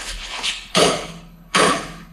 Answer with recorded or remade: remade